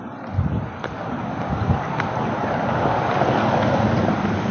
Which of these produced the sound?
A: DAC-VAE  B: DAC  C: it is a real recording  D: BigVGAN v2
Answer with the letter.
C